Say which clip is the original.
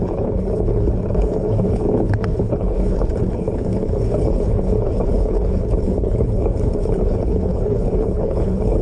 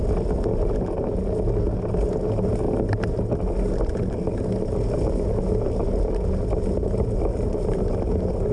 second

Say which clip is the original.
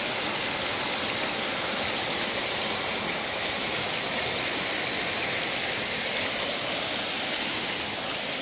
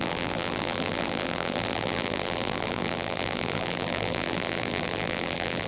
first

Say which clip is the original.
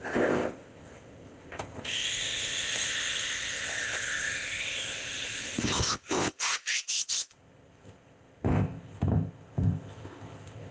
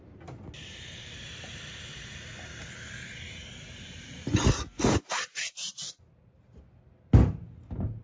second